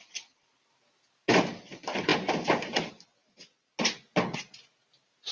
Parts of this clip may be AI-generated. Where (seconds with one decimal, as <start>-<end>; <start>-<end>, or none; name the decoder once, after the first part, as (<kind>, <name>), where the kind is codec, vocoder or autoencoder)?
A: none